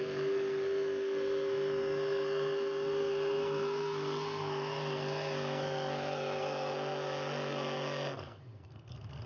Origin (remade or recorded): remade